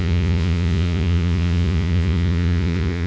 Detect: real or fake fake